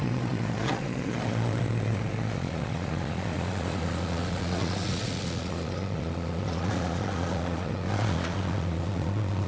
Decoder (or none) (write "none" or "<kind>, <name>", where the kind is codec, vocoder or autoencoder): vocoder, Vocos